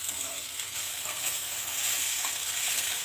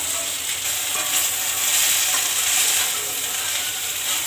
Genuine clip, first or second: second